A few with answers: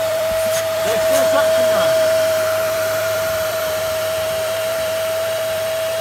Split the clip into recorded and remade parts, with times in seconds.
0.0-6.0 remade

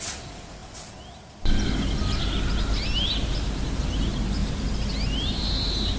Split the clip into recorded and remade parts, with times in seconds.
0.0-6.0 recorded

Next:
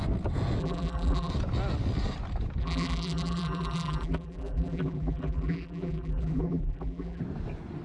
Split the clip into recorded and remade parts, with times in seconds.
0.0-0.6 recorded; 0.6-1.3 remade; 1.3-2.6 recorded; 2.6-7.2 remade; 7.2-7.8 recorded

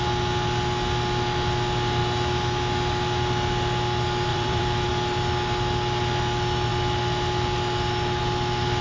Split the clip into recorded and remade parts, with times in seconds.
0.0-4.3 recorded; 4.3-4.9 remade; 4.9-8.8 recorded

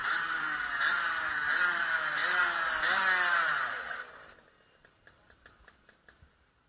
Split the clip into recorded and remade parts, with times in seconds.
0.0-2.2 remade; 2.2-6.0 recorded; 6.0-6.7 remade

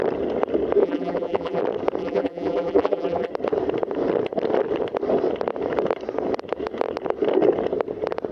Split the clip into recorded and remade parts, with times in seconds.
0.0-0.8 recorded; 0.8-1.6 remade; 1.6-2.0 recorded; 2.0-3.3 remade; 3.3-8.3 recorded

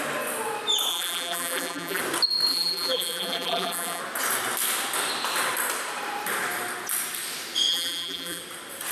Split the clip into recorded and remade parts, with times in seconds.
0.0-0.9 recorded; 0.9-2.0 remade; 2.0-2.5 recorded; 2.5-4.0 remade; 4.0-7.7 recorded; 7.7-8.4 remade; 8.4-8.9 recorded